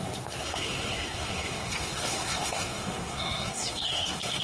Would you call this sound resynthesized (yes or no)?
yes